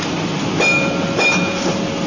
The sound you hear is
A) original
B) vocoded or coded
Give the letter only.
A